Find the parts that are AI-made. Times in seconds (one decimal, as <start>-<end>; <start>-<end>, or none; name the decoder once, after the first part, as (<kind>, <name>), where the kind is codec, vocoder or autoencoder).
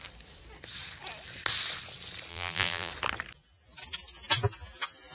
2.3-2.9 (vocoder, BigVGAN v2)